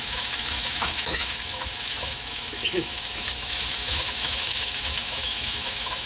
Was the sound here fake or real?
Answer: fake